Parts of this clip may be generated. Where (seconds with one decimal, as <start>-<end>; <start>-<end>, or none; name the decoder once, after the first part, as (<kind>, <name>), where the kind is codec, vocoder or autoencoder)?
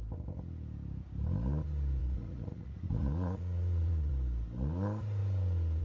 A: 2.0-4.1 (vocoder, Vocos)